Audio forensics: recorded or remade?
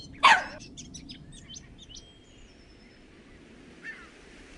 recorded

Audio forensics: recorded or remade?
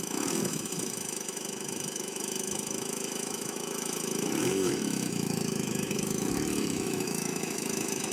remade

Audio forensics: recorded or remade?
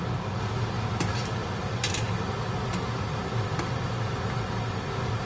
recorded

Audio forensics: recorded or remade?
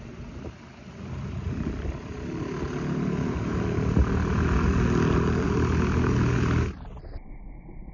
recorded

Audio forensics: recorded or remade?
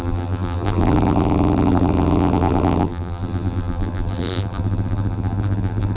remade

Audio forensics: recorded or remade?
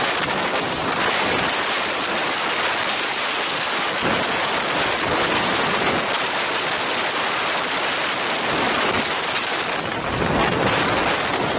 recorded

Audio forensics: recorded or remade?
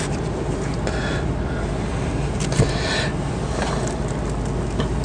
recorded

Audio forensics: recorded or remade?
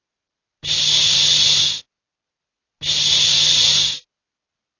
recorded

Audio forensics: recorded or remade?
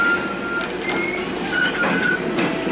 recorded